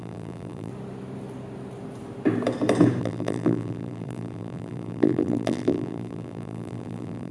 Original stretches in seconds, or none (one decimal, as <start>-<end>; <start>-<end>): 0.7-3.0